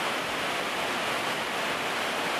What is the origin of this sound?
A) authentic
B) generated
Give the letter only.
A